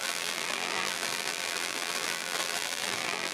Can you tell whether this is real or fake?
fake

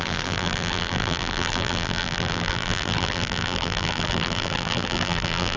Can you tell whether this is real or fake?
fake